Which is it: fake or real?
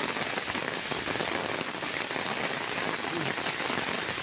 real